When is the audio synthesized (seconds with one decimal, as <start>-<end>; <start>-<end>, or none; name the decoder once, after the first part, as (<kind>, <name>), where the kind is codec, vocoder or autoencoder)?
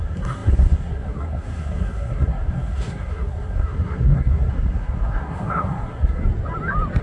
0.0-6.2 (codec, SNAC)